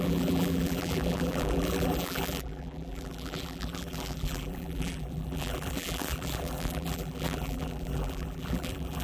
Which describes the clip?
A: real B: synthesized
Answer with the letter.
B